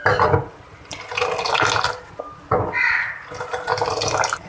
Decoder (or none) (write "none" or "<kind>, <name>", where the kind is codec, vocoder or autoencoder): none